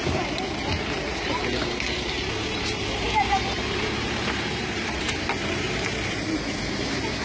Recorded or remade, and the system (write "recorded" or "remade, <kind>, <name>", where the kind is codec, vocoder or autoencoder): remade, vocoder, BigVGAN v2